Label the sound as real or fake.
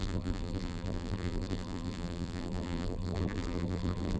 fake